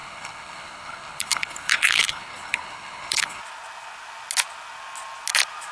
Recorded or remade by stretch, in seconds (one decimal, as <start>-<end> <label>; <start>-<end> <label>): 0.0-3.4 remade; 3.4-5.7 recorded